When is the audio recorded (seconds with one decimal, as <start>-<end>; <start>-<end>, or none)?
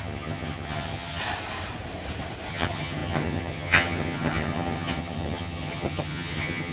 1.2-2.5